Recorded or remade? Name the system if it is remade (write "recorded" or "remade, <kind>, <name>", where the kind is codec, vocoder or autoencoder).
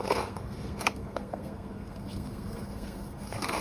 remade, codec, SNAC